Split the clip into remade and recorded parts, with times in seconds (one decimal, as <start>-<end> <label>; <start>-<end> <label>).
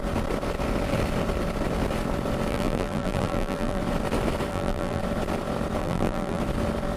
0.0-2.5 recorded; 2.5-3.8 remade; 3.8-4.5 recorded; 4.5-5.0 remade; 5.0-5.8 recorded; 5.8-6.4 remade; 6.4-7.0 recorded